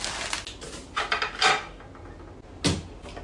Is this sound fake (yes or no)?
no